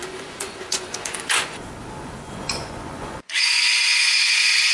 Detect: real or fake fake